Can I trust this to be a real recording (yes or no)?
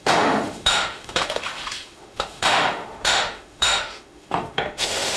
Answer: no